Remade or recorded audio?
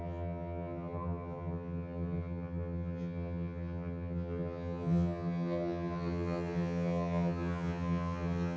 remade